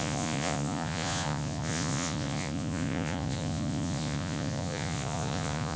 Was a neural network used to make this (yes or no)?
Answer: yes